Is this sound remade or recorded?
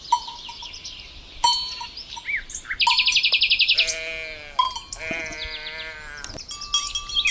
recorded